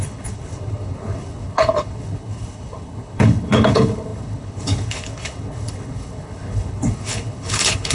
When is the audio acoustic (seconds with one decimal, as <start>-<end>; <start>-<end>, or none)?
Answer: none